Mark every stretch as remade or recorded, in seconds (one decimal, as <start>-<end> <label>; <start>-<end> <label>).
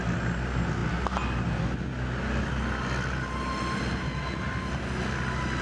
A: 0.0-5.6 recorded